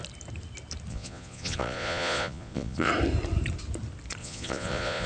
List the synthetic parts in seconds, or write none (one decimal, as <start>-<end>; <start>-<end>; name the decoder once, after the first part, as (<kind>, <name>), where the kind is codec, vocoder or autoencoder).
0.9-2.9 (vocoder, Vocos); 4.2-5.1

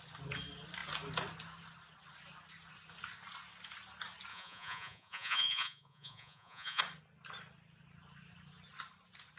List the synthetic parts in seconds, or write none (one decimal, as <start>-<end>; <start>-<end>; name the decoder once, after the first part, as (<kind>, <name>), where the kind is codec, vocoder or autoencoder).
4.3-6.8 (vocoder, Vocos)